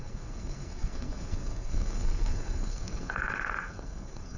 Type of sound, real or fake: fake